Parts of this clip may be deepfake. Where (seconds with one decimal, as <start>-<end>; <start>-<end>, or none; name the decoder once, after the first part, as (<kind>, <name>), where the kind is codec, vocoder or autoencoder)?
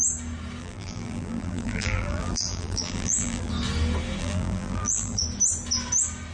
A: 0.6-3.5 (vocoder, BigVGAN v2); 4.2-5.2